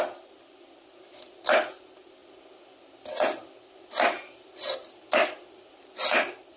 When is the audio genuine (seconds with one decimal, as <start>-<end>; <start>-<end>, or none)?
0.0-6.6